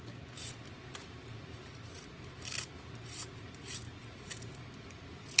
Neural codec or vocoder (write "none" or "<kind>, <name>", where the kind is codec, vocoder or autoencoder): none